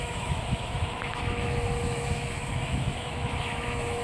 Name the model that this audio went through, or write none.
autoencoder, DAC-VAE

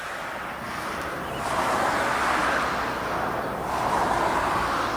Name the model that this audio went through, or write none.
none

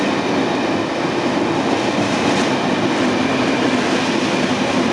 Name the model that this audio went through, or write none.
none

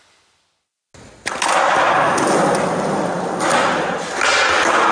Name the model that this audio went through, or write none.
none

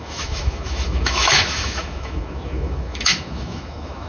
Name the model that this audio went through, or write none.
autoencoder, DAC-VAE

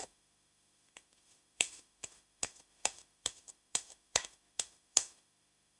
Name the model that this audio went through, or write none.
autoencoder, DAC-VAE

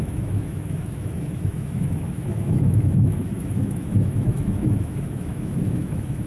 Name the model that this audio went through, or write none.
autoencoder, DAC-VAE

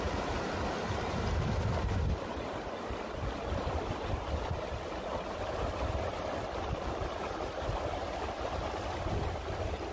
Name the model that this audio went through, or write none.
none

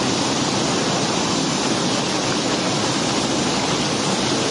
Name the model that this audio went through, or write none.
none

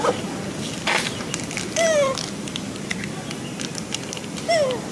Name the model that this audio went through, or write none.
none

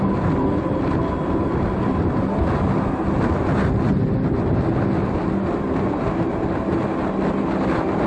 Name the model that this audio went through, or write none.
none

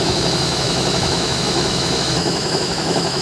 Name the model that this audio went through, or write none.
autoencoder, DAC-VAE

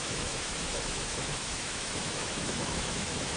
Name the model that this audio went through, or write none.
autoencoder, DAC-VAE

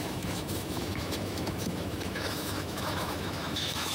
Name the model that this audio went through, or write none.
autoencoder, DAC-VAE